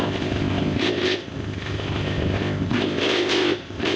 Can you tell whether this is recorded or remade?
remade